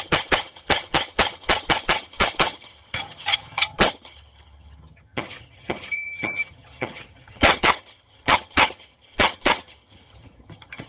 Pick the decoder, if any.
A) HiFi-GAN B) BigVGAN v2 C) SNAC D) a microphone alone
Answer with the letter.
A